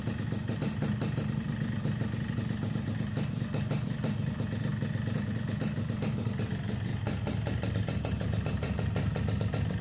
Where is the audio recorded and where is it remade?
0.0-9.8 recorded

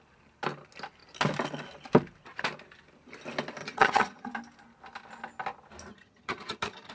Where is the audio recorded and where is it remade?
0.0-3.6 recorded; 3.6-4.3 remade; 4.3-5.9 recorded; 5.9-6.9 remade

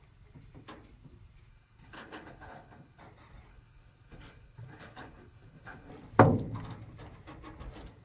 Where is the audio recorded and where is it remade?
0.0-1.5 recorded; 1.5-3.0 remade; 3.0-3.5 recorded; 3.5-5.9 remade; 5.9-8.0 recorded

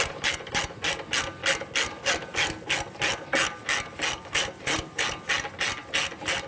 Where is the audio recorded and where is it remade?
0.0-6.5 recorded